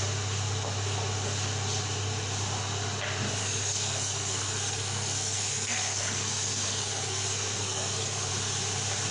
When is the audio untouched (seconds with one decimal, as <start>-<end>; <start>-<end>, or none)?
0.0-3.4; 8.3-9.1